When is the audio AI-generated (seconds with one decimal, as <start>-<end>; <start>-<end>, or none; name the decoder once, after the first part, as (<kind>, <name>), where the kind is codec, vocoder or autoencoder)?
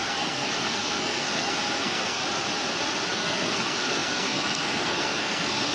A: 0.0-2.2 (codec, SNAC); 3.1-5.7